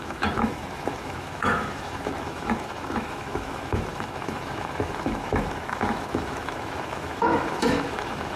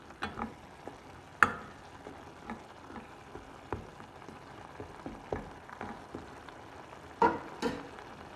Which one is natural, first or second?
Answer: second